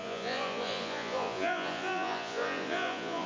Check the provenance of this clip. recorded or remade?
remade